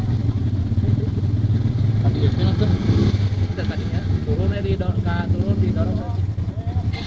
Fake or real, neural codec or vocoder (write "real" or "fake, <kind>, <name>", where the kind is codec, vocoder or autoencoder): real